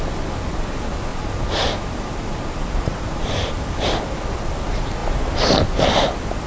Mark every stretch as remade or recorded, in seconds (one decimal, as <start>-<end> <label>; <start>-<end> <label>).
0.0-1.1 recorded; 1.1-3.5 remade; 3.5-6.5 recorded

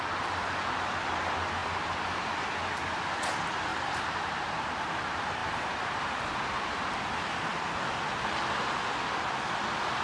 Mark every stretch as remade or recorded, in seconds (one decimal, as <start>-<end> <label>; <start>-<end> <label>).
0.0-1.6 recorded; 1.6-2.3 remade; 2.3-3.7 recorded; 3.7-5.0 remade; 5.0-5.4 recorded; 5.4-6.2 remade; 6.2-10.0 recorded

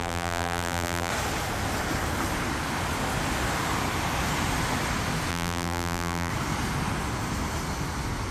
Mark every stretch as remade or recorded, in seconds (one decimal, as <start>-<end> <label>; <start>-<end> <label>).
0.0-1.1 remade; 1.1-5.3 recorded; 5.3-6.3 remade; 6.3-8.3 recorded

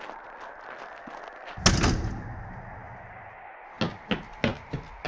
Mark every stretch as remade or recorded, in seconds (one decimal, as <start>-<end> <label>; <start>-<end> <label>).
0.0-0.5 recorded; 0.5-1.1 remade; 1.1-5.1 recorded